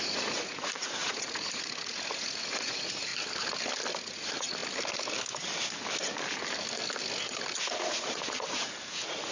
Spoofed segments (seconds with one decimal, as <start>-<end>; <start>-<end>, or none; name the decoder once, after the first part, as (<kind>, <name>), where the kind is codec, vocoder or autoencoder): 0.0-3.1 (vocoder, Vocos); 4.0-4.6; 7.6-9.3